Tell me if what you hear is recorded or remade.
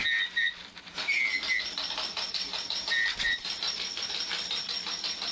recorded